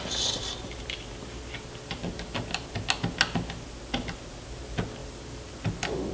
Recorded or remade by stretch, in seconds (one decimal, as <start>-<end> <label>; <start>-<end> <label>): 0.0-6.1 recorded